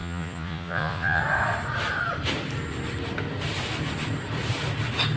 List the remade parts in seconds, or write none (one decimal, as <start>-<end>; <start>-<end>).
0.0-1.2